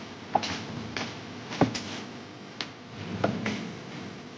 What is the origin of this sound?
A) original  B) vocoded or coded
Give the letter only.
A